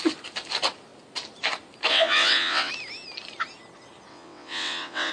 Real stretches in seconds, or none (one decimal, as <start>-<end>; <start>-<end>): 0.0-1.9; 2.7-4.1